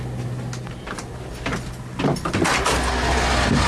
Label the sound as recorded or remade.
recorded